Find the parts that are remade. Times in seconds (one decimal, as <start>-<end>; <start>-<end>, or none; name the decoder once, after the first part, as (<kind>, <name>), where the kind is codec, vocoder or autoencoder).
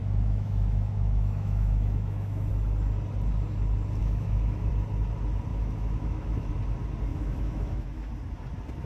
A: 0.0-2.5 (autoencoder, DAC-VAE); 4.0-4.7; 5.5-6.5; 7.1-8.1